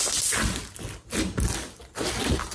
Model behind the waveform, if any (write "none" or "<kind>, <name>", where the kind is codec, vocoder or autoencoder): none